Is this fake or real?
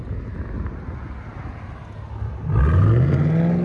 real